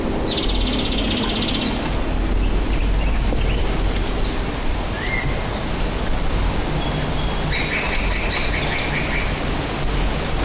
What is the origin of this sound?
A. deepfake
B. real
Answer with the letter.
B